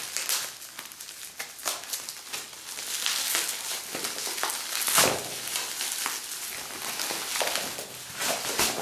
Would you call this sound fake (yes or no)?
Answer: no